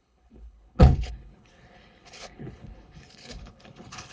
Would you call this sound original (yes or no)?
no